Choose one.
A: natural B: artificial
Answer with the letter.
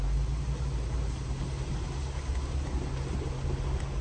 A